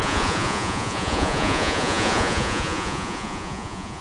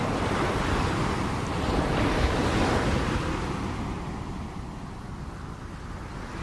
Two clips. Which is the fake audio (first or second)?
first